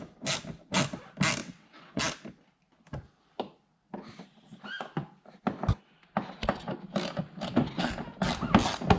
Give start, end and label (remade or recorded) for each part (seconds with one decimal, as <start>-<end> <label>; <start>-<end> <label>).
0.0-1.4 recorded; 1.4-2.0 remade; 2.0-9.0 recorded